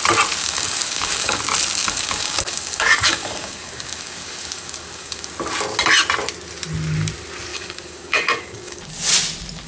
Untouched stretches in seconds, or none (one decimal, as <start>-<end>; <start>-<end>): 0.0-0.4; 1.4-1.8; 5.3-7.5; 8.8-9.7